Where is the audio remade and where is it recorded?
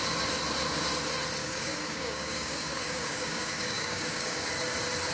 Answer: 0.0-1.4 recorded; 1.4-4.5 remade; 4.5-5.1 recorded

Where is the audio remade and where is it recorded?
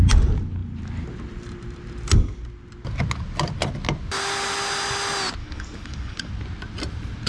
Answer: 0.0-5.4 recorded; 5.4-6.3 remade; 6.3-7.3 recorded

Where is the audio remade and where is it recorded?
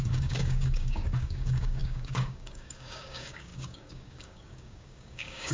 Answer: 0.0-5.5 remade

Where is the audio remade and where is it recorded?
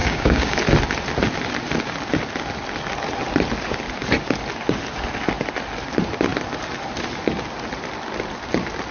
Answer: 0.0-0.6 remade; 0.6-8.9 recorded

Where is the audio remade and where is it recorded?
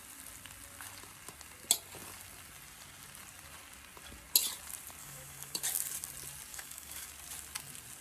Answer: 0.0-5.0 recorded; 5.0-5.7 remade; 5.7-6.5 recorded; 6.5-7.1 remade; 7.1-8.0 recorded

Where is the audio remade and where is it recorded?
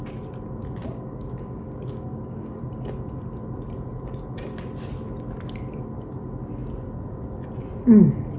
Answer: 0.0-0.8 recorded; 0.8-2.6 remade; 2.6-8.4 recorded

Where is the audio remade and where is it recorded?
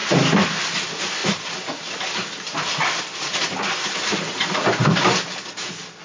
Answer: 0.0-6.0 recorded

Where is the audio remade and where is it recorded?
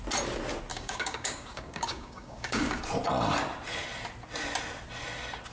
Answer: 0.0-0.7 recorded; 0.7-2.8 remade; 2.8-5.5 recorded